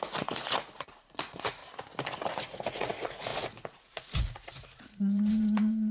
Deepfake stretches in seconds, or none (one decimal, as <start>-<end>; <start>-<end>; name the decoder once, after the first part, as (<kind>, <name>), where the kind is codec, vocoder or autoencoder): 0.0-1.6 (vocoder, Vocos); 2.4-5.9